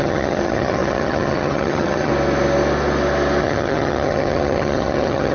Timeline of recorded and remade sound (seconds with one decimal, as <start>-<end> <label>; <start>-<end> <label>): 0.0-2.1 remade; 2.1-3.4 recorded; 3.4-5.3 remade